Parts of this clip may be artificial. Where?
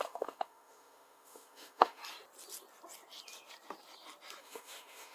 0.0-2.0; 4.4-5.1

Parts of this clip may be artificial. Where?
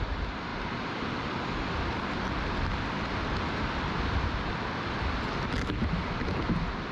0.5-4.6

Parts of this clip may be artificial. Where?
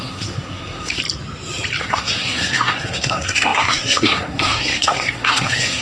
0.0-1.0; 1.8-5.8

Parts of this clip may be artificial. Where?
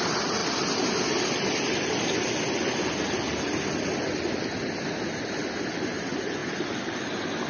none